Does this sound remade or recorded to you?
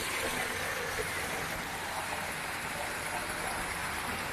recorded